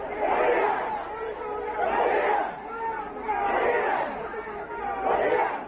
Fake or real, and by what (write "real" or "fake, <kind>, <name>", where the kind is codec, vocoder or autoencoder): real